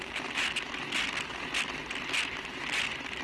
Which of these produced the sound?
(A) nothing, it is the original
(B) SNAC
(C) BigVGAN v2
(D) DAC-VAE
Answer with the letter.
A